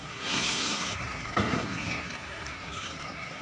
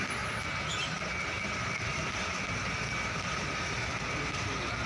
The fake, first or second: first